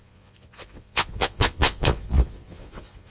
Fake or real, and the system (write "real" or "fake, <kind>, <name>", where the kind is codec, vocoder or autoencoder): fake, vocoder, Vocos